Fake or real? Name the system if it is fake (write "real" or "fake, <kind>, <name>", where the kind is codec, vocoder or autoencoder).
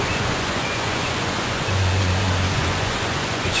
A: fake, vocoder, Vocos